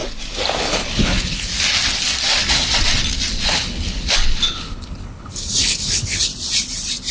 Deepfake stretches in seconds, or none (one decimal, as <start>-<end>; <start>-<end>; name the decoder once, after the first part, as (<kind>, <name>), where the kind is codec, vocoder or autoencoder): 0.6-1.5 (codec, HILCodec); 3.5-6.3